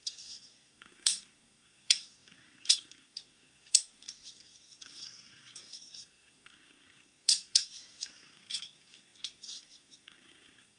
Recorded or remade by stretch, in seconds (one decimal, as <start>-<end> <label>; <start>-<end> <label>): 0.0-10.8 remade